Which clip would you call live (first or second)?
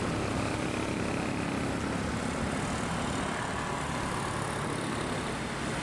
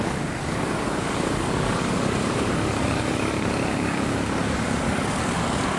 first